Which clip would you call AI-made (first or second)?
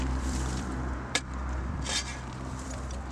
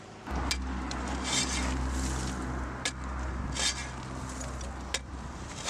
first